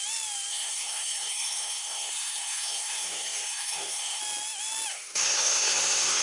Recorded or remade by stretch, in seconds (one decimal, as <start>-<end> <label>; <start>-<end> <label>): 0.0-0.5 recorded; 0.5-4.2 remade; 4.2-4.9 recorded; 4.9-6.2 remade

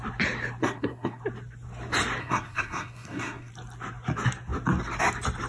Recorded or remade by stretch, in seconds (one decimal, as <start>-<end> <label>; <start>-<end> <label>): 0.0-0.6 recorded; 0.6-1.2 remade; 1.2-2.2 recorded; 2.2-3.5 remade; 3.5-5.5 recorded